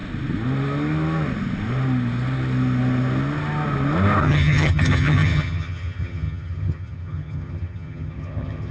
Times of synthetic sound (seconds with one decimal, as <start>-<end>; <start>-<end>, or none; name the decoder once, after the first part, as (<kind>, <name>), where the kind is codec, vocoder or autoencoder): 4.2-8.7 (vocoder, HiFi-GAN)